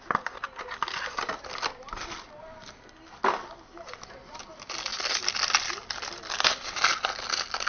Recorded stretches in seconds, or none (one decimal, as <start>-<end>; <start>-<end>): 0.0-7.7